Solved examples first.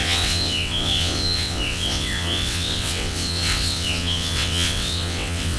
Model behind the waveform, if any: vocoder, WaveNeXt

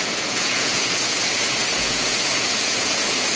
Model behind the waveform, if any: vocoder, Vocos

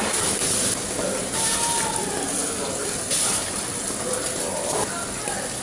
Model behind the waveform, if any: none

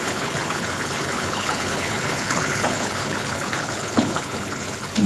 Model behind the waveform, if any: codec, HILCodec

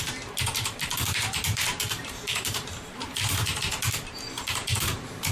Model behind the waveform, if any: vocoder, BigVGAN v2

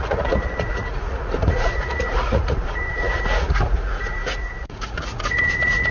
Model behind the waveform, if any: vocoder, Vocos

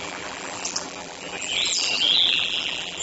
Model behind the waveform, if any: vocoder, BigVGAN v2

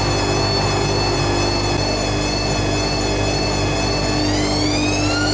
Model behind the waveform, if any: none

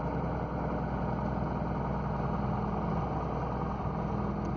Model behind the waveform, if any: none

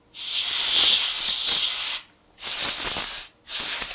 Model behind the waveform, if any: none